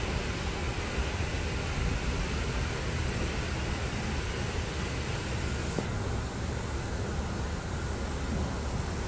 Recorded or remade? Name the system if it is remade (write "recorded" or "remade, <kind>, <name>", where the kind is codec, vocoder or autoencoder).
recorded